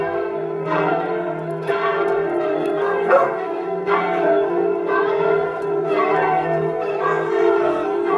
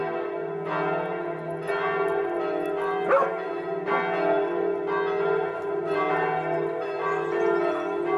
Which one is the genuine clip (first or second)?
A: second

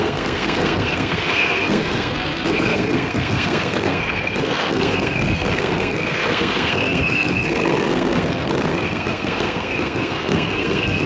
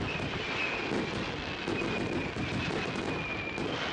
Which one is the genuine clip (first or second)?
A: second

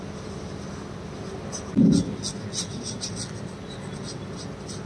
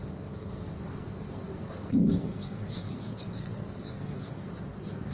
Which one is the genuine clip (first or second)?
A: first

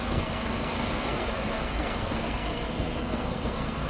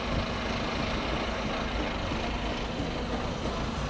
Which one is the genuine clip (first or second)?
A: second